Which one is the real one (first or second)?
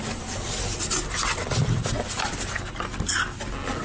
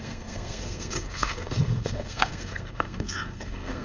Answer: first